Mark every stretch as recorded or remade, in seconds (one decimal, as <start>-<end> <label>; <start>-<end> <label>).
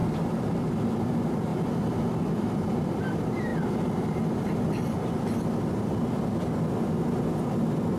0.0-1.5 remade; 1.5-2.4 recorded; 2.4-3.5 remade; 3.5-8.0 recorded